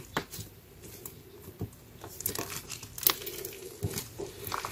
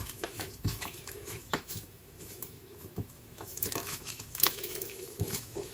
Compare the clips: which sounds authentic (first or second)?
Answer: first